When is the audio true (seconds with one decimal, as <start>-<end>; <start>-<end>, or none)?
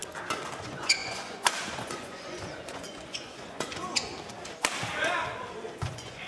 0.0-0.6; 4.1-5.7